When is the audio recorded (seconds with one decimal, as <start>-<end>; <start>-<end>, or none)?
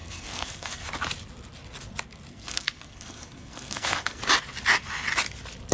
0.9-2.3; 4.2-5.7